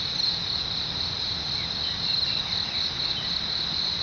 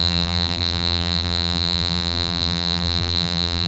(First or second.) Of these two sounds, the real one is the first